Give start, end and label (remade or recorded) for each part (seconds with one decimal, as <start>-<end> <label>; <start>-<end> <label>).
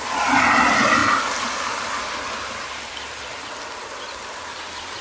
0.0-5.0 recorded